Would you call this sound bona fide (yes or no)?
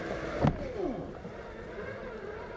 yes